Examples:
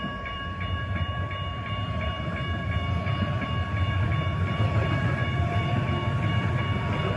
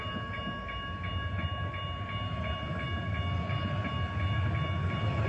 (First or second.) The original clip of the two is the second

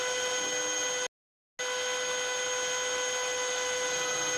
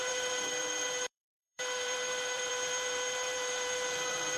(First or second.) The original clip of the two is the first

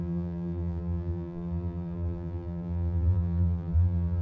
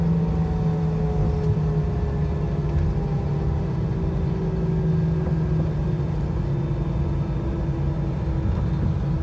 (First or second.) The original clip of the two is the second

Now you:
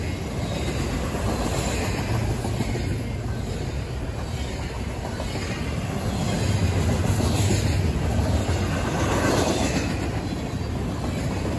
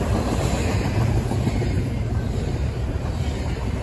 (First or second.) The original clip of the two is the first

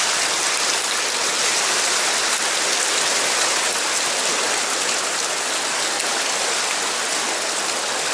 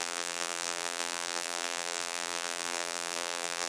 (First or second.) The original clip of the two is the first